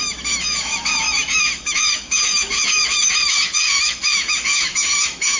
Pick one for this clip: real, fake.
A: fake